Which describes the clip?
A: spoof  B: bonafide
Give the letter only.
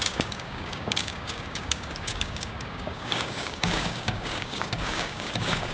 A